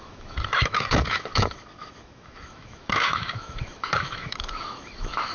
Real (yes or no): no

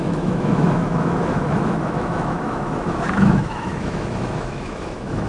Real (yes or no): no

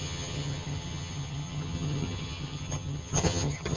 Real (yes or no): no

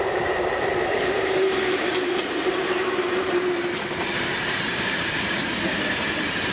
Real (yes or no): no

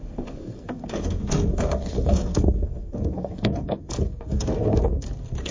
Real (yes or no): no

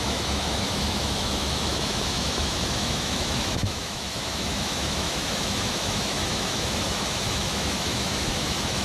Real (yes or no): no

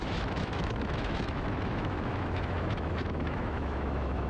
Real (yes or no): no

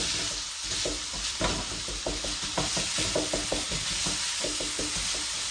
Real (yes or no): yes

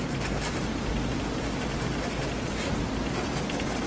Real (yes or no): yes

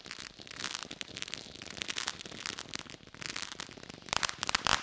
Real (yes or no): yes